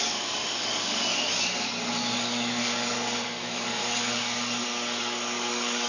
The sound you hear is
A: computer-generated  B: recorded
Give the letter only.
A